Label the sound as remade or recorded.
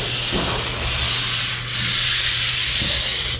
recorded